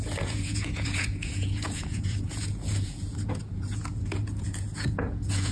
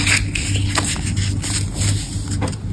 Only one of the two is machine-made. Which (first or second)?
first